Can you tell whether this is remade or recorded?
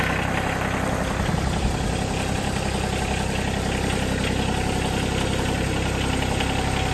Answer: recorded